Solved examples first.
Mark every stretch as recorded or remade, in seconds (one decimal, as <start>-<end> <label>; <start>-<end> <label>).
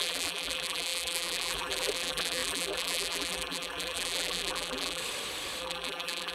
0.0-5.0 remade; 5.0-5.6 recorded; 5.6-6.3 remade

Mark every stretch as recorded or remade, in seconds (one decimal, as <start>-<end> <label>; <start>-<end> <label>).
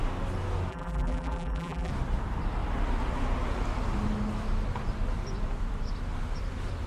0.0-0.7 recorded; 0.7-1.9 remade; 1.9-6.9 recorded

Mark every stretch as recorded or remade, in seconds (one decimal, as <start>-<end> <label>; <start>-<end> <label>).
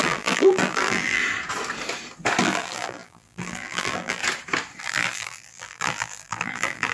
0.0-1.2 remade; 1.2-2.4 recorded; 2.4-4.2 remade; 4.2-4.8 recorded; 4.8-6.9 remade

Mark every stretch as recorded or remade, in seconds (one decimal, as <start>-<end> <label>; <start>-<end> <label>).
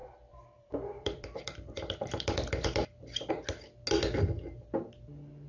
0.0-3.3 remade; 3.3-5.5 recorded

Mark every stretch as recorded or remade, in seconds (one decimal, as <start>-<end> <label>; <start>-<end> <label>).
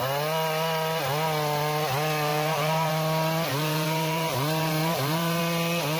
0.0-2.3 recorded; 2.3-2.9 remade; 2.9-3.5 recorded; 3.5-5.4 remade; 5.4-6.0 recorded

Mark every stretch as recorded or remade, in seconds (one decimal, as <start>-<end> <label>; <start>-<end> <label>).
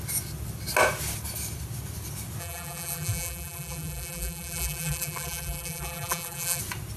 0.0-2.4 recorded; 2.4-6.6 remade; 6.6-7.0 recorded